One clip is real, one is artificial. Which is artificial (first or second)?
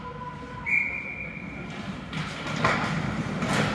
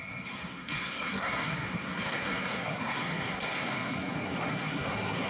second